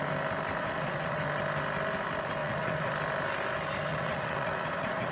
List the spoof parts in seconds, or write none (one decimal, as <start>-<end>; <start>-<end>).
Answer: 0.6-1.2; 2.4-2.9; 3.9-5.1